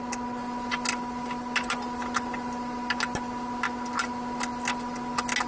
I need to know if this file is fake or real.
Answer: real